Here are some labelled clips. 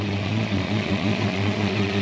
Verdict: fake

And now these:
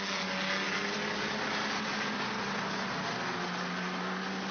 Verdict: real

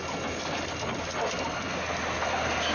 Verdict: real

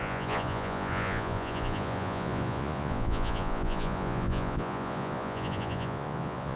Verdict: fake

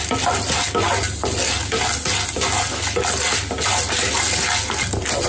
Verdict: real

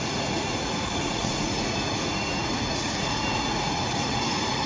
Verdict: fake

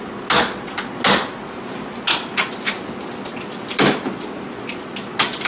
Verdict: real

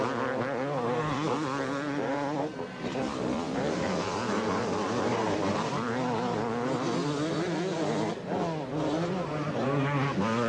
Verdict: real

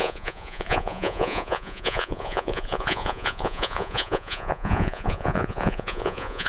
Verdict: fake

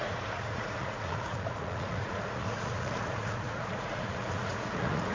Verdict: fake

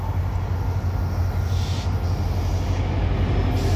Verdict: real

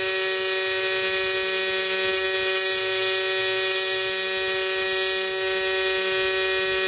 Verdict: real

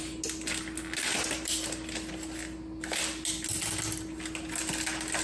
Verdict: real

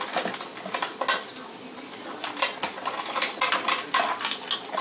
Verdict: real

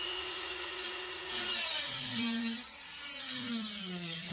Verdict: fake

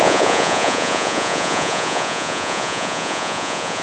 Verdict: fake